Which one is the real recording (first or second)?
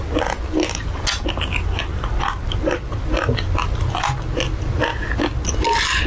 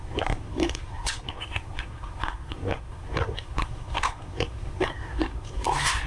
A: first